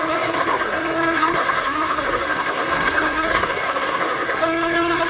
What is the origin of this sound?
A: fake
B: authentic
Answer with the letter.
A